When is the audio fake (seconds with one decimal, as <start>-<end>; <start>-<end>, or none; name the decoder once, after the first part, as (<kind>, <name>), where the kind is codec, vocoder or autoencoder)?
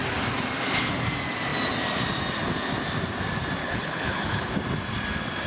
3.6-4.5 (codec, HILCodec)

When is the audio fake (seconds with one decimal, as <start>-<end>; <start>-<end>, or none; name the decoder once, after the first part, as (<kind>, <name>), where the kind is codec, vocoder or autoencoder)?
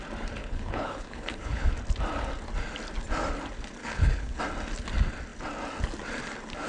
0.4-1.7 (codec, HILCodec); 3.8-4.4